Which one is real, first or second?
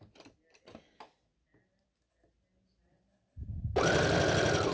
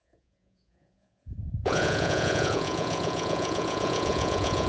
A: first